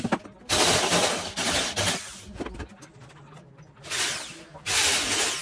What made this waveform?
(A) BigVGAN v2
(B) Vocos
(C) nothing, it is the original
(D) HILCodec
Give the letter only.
C